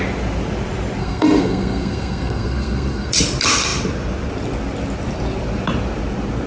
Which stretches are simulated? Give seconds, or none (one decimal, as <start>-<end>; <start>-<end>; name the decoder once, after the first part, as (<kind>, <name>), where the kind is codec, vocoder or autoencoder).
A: 1.0-3.1 (codec, SNAC)